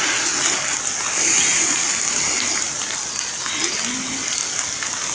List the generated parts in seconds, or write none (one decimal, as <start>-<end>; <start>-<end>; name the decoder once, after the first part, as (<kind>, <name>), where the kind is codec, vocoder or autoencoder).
none